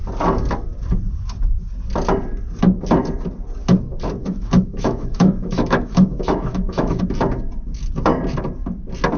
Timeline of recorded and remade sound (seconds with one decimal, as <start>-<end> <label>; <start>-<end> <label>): 0.0-4.2 recorded; 4.2-7.0 remade; 7.0-9.2 recorded